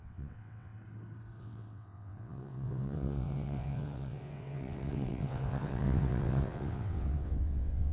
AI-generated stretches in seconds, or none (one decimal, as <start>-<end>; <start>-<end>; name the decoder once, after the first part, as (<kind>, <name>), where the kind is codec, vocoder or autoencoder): 0.0-0.7 (vocoder, WaveNeXt); 1.4-7.9